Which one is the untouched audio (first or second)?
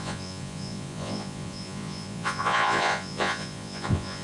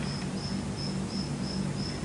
second